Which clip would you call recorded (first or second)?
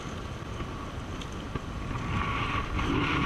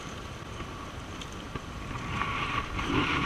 first